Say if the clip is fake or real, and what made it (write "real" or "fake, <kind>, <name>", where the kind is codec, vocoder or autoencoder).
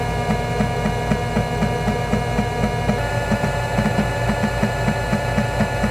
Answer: real